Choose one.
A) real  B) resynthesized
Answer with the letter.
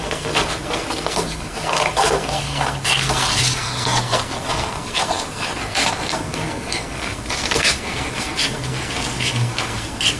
B